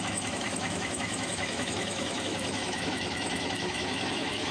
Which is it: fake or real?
fake